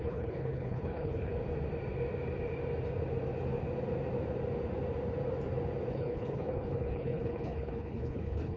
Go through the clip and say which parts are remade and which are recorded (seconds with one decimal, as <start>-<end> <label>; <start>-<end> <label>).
0.0-1.3 remade; 1.3-5.9 recorded; 5.9-8.6 remade

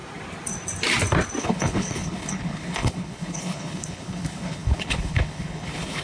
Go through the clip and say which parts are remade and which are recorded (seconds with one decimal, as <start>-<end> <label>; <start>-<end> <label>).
0.0-1.4 recorded; 1.4-6.0 remade

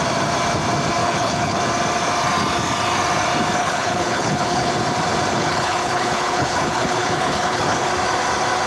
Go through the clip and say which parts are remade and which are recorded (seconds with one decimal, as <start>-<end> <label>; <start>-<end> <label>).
0.0-1.0 recorded; 1.0-1.6 remade; 1.6-3.6 recorded; 3.6-4.7 remade; 4.7-5.3 recorded; 5.3-7.9 remade; 7.9-8.7 recorded

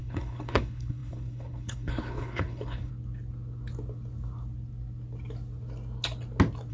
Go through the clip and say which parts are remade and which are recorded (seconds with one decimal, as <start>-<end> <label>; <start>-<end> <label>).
0.0-2.9 remade; 2.9-6.7 recorded

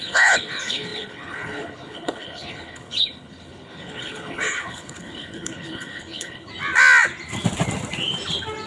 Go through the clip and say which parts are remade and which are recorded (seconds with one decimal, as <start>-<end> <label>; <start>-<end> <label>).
0.0-6.5 remade; 6.5-8.7 recorded

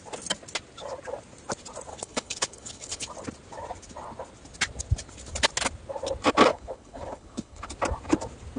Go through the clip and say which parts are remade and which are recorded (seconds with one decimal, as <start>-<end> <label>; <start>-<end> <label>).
0.0-1.9 recorded; 1.9-3.1 remade; 3.1-6.5 recorded; 6.5-7.7 remade; 7.7-8.6 recorded